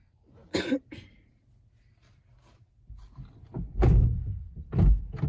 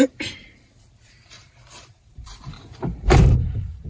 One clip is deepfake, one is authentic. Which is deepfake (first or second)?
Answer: second